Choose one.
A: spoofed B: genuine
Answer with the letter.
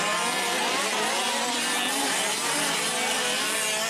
B